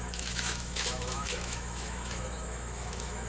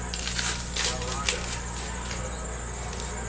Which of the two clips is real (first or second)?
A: second